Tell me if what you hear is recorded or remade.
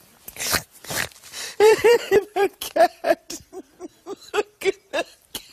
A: remade